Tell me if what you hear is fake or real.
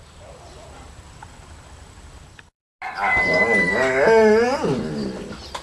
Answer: real